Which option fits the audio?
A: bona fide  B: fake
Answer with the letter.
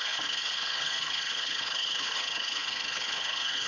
B